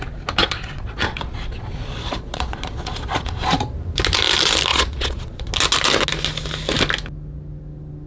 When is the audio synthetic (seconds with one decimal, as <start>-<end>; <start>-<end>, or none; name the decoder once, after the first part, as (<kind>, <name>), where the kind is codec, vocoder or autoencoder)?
0.4-3.6 (vocoder, Vocos); 4.7-5.5